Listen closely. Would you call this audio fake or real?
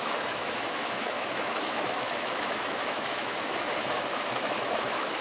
fake